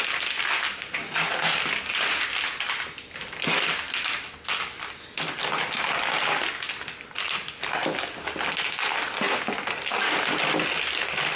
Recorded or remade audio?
recorded